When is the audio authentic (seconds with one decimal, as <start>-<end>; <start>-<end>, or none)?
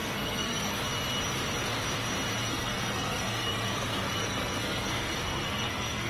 0.8-2.5